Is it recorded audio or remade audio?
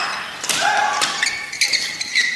recorded